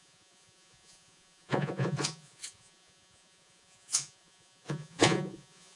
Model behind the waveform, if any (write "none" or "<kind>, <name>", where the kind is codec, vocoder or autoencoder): vocoder, Vocos